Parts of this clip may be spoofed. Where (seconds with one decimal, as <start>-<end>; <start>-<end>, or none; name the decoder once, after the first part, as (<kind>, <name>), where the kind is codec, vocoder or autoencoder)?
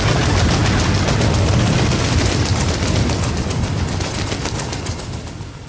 none